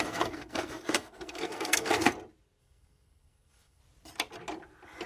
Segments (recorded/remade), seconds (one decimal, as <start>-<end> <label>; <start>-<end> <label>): 0.0-2.1 remade; 2.1-2.6 recorded; 2.6-3.8 remade; 3.8-5.1 recorded